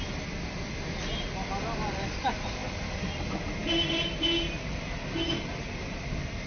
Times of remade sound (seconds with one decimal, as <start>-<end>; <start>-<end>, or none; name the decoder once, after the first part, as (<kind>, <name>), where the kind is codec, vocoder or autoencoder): none